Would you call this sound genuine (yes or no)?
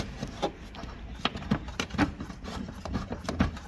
yes